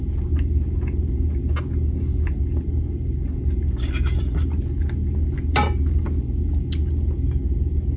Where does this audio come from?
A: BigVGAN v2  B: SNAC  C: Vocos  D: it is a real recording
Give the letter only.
D